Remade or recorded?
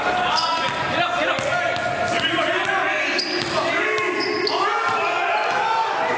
recorded